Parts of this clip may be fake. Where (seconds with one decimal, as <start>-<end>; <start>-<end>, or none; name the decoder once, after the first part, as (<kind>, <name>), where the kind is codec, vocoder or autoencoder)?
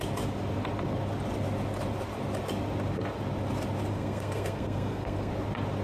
3.9-5.3 (codec, SNAC)